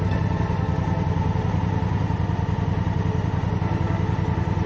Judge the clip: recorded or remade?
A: recorded